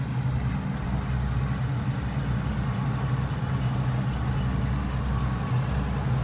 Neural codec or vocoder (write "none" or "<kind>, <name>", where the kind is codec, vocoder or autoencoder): none